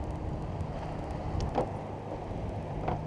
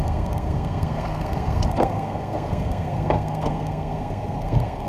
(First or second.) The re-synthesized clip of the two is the second